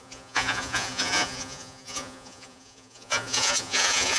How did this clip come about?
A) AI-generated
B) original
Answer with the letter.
A